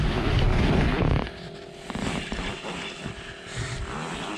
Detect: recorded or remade recorded